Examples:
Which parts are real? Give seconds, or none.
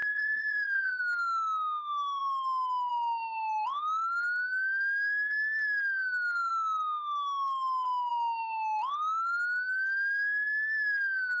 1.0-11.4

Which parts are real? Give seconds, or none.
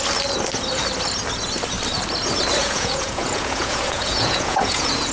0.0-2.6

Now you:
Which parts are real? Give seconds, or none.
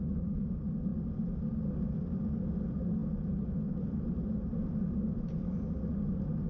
0.0-6.5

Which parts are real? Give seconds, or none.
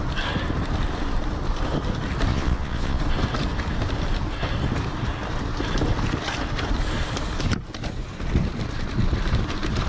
0.0-2.3; 3.0-9.9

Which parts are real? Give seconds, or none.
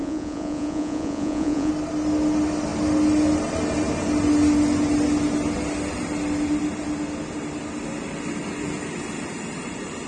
1.7-10.1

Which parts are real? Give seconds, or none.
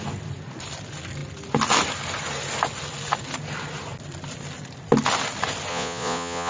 0.0-5.7